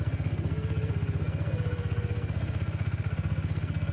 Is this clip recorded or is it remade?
remade